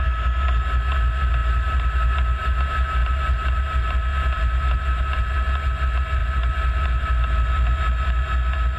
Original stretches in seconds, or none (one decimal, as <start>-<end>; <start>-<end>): 0.0-8.8